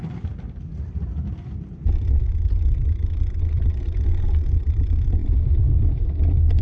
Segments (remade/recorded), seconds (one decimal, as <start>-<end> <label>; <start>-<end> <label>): 0.0-6.6 recorded